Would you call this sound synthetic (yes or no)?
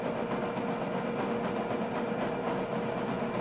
no